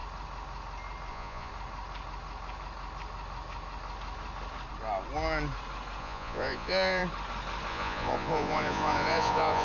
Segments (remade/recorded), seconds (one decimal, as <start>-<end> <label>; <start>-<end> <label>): 0.0-1.1 recorded; 1.1-1.5 remade; 1.5-6.0 recorded; 6.0-7.0 remade; 7.0-7.7 recorded; 7.7-9.6 remade

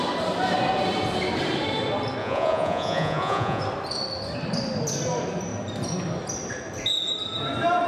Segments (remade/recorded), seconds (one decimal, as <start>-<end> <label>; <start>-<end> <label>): 0.0-2.2 recorded; 2.2-3.6 remade; 3.6-7.9 recorded

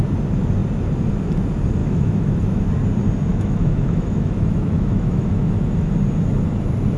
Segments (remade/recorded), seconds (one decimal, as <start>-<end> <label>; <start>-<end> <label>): 0.0-1.8 recorded; 1.8-2.6 remade; 2.6-3.3 recorded; 3.3-5.9 remade; 5.9-7.0 recorded

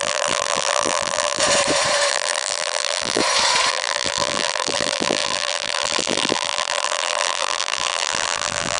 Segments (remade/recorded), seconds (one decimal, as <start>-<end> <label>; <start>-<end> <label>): 0.0-1.4 remade; 1.4-2.1 recorded; 2.1-3.2 remade; 3.2-3.7 recorded; 3.7-8.8 remade

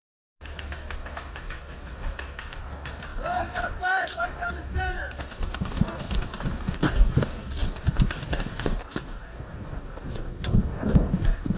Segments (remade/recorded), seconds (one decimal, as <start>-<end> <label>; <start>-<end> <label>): 0.0-11.6 remade

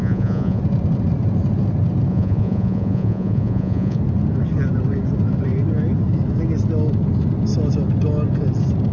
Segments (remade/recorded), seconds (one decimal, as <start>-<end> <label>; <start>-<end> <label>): 0.0-0.6 remade; 0.6-2.1 recorded; 2.1-4.0 remade; 4.0-8.9 recorded